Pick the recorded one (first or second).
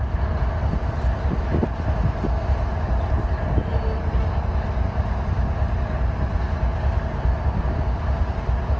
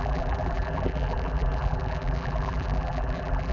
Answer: first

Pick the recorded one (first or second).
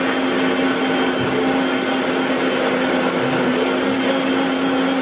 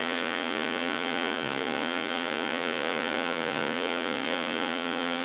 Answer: first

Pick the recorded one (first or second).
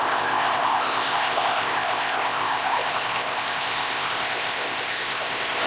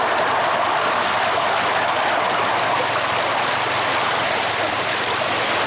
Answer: second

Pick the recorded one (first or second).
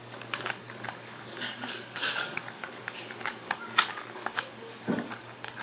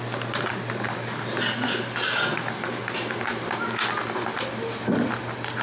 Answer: second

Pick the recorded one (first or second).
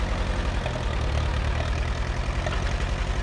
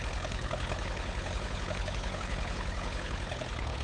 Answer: first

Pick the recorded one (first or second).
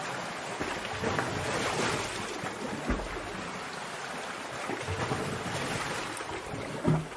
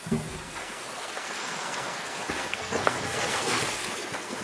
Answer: first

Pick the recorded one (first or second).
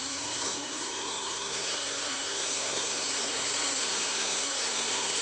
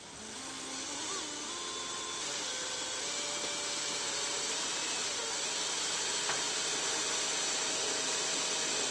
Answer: second